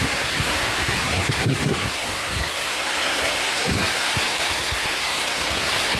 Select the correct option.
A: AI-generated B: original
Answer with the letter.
A